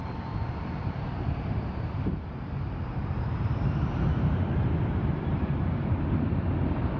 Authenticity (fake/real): fake